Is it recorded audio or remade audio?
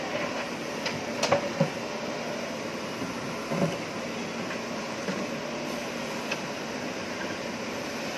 recorded